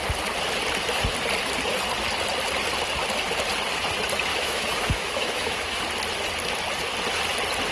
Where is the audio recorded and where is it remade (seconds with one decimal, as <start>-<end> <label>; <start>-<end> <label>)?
0.0-4.3 recorded; 4.3-5.8 remade; 5.8-7.7 recorded